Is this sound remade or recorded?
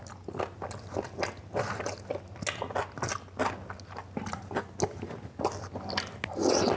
recorded